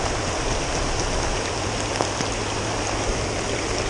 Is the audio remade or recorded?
recorded